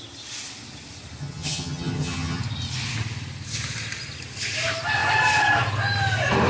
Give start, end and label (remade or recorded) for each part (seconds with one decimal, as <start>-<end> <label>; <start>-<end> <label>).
0.0-1.2 recorded; 1.2-2.4 remade; 2.4-6.5 recorded